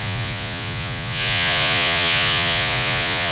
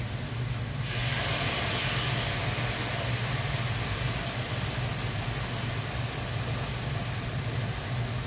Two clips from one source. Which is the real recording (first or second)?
second